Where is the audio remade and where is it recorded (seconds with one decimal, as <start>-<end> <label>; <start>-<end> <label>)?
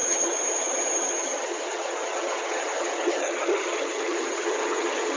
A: 0.0-5.2 remade